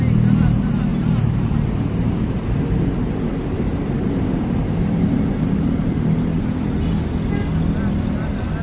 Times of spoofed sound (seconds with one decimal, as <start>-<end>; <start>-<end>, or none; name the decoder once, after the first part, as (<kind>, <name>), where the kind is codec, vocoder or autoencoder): 0.9-5.6 (vocoder, BigVGAN v2)

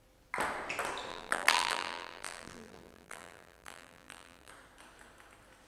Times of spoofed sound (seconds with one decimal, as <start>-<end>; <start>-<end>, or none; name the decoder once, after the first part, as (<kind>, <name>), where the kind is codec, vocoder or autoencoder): 1.1-4.5 (vocoder, BigVGAN v2)

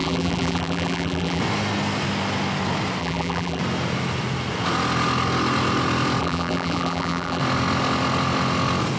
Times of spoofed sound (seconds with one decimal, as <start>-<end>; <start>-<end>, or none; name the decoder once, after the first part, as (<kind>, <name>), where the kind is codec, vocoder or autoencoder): 0.0-1.4 (vocoder, BigVGAN v2); 3.0-3.6; 6.2-7.4

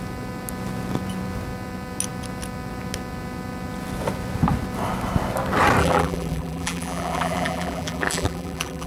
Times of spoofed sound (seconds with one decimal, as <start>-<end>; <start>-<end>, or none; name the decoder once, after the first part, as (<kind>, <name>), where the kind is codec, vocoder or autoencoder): 5.8-8.9 (vocoder, BigVGAN v2)

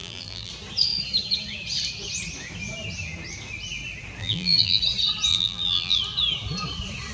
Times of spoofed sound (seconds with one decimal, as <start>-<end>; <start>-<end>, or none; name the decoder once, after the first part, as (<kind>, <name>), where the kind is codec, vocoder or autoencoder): 0.0-0.5 (vocoder, BigVGAN v2); 4.2-4.8; 5.3-6.0